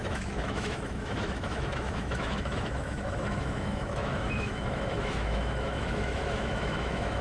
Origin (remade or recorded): remade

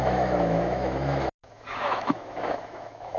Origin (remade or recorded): remade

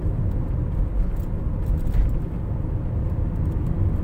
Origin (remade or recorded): recorded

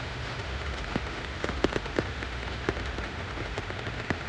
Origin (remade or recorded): remade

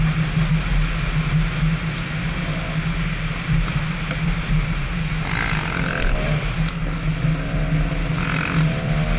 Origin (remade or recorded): recorded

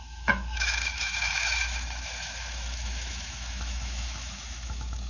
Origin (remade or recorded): remade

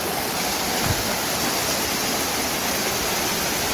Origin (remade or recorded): recorded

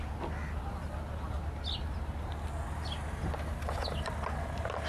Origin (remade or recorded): recorded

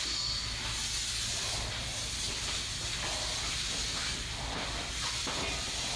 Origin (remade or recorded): recorded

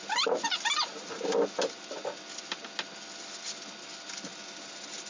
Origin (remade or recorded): recorded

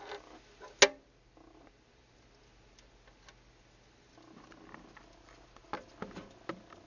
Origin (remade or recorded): recorded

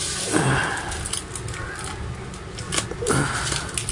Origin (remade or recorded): recorded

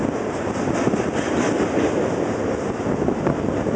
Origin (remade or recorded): recorded